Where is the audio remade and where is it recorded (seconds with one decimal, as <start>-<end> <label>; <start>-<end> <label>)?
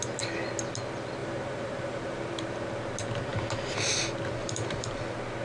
0.0-1.2 recorded; 1.2-2.8 remade; 2.8-4.4 recorded; 4.4-5.0 remade; 5.0-5.4 recorded